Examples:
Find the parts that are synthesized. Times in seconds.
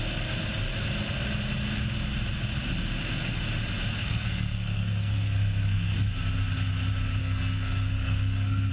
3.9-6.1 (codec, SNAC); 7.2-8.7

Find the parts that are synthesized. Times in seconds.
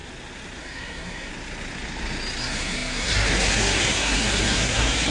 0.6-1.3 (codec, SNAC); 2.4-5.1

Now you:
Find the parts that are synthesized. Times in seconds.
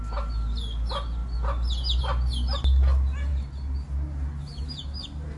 none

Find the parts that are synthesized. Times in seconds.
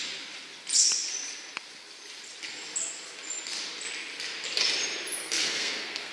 5.2-6.1 (codec, SNAC)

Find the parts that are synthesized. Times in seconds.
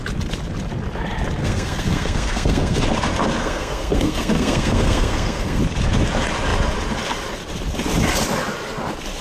1.4-2.8 (codec, SNAC); 3.4-5.6